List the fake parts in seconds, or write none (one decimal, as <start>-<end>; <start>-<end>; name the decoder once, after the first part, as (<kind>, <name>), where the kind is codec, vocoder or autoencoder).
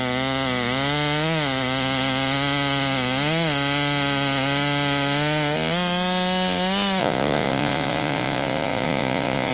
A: 7.0-9.5 (vocoder, Vocos)